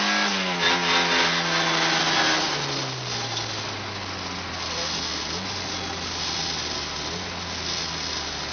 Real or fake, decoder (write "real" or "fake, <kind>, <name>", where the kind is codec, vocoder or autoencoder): real